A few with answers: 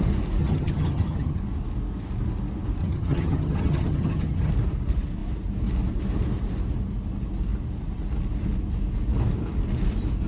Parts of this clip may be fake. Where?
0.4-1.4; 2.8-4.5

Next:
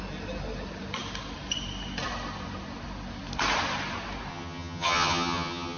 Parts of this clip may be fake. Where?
4.3-5.8

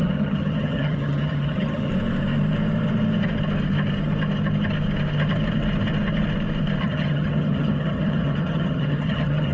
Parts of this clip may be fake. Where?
0.0-1.9; 6.8-9.5

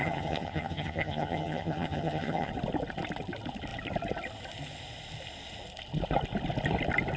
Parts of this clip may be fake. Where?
0.0-2.5

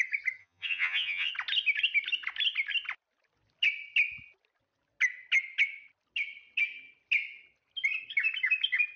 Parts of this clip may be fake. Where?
0.4-1.3

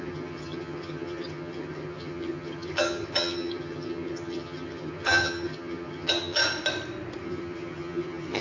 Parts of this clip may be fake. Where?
0.0-6.4; 7.2-8.4

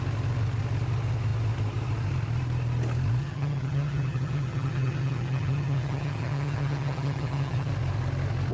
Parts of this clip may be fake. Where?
3.2-7.7